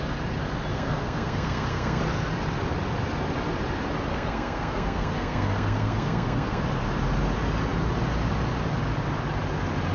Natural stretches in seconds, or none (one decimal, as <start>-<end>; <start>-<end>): 0.0-0.7; 2.0-4.1; 6.6-9.9